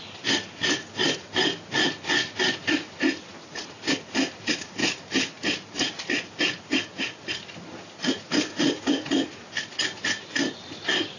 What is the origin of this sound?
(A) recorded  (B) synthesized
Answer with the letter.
A